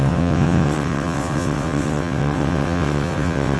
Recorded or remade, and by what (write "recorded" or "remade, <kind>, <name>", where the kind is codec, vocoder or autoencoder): remade, vocoder, WaveNeXt